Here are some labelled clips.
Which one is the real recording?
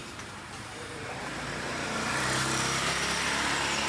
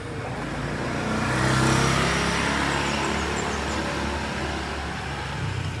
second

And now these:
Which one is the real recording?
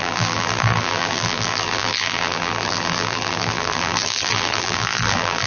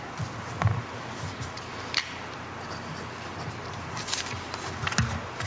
second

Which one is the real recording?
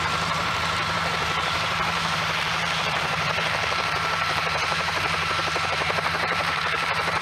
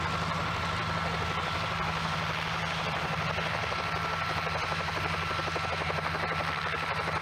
second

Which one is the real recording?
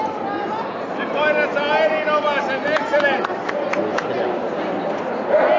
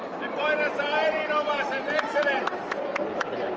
first